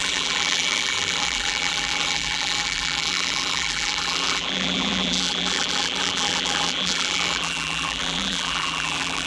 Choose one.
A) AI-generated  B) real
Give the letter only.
A